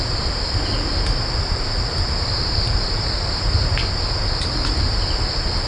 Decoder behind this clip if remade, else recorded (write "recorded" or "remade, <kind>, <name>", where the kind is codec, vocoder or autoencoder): recorded